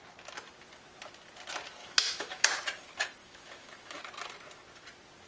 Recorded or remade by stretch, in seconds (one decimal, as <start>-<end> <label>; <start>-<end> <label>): 0.0-1.8 recorded; 1.8-2.5 remade; 2.5-3.2 recorded; 3.2-4.0 remade; 4.0-5.3 recorded